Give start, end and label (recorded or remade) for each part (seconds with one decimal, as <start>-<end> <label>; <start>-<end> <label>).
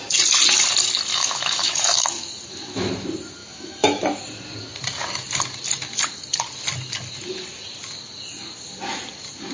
0.0-1.1 recorded; 1.1-2.3 remade; 2.3-3.4 recorded; 3.4-4.0 remade; 4.0-9.5 recorded